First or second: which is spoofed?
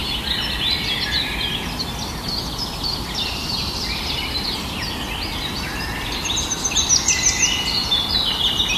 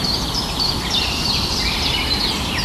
second